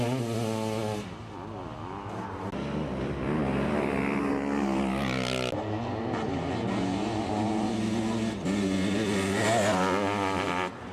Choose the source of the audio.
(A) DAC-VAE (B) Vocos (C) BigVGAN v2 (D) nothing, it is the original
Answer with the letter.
D